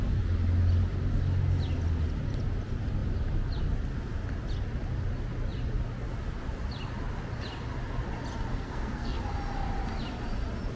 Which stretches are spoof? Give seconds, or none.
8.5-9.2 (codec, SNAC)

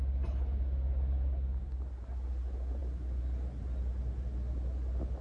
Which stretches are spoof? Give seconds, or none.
none

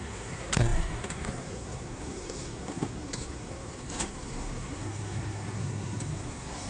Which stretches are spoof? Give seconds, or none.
0.0-6.7 (codec, SNAC)

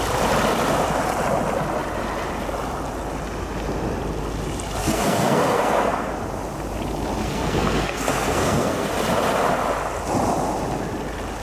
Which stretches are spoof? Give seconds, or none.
4.8-6.1 (codec, SNAC); 7.2-8.9

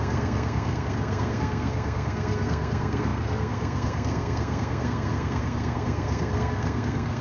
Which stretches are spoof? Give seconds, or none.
0.0-7.2 (codec, SNAC)

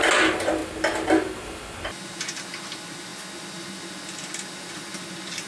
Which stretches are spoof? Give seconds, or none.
none